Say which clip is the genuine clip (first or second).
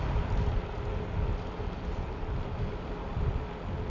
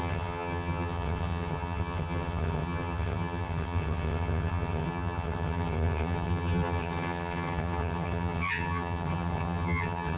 first